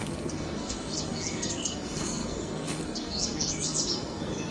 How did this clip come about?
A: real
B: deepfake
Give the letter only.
B